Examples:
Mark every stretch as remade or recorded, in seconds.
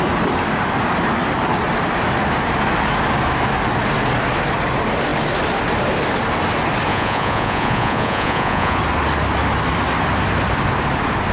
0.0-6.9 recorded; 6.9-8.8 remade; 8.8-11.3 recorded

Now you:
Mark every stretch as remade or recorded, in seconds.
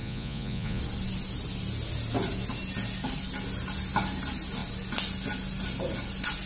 0.0-0.8 remade; 0.8-6.5 recorded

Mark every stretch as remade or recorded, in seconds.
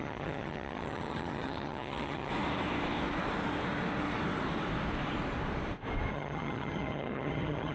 0.0-2.3 remade; 2.3-6.1 recorded; 6.1-7.7 remade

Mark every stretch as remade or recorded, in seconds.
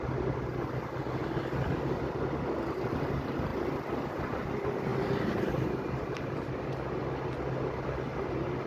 0.0-4.9 recorded; 4.9-6.5 remade; 6.5-8.7 recorded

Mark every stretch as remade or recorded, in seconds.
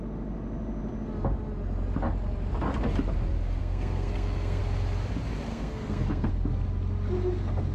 0.0-3.6 recorded; 3.6-4.6 remade; 4.6-5.5 recorded; 5.5-6.3 remade; 6.3-7.7 recorded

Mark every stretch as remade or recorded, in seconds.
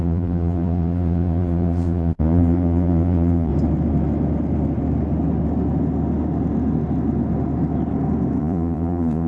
0.0-3.5 remade; 3.5-8.4 recorded; 8.4-9.3 remade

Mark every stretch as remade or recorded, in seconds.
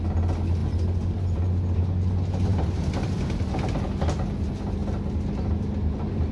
0.0-6.3 recorded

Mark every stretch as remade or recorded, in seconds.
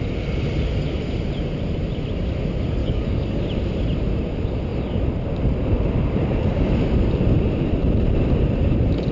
0.0-2.8 recorded; 2.8-3.4 remade; 3.4-9.1 recorded